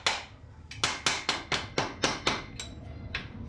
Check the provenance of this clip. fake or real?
real